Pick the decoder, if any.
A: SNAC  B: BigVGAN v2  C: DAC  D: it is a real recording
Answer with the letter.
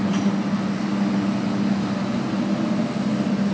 D